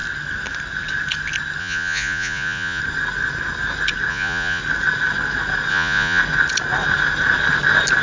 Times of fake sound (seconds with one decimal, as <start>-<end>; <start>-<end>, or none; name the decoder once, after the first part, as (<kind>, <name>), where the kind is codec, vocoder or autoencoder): 1.6-2.8 (vocoder, Vocos); 4.1-4.6; 5.7-6.2